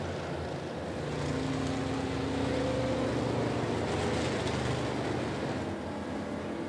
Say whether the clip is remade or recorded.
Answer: recorded